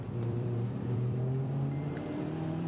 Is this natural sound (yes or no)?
no